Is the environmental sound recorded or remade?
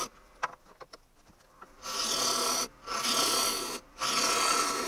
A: recorded